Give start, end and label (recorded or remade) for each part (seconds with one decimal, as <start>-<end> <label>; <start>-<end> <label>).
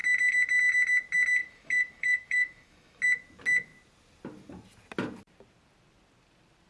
0.0-1.4 recorded; 1.4-3.0 remade; 3.0-6.7 recorded